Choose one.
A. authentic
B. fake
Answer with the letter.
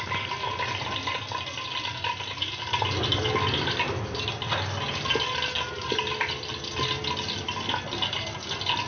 A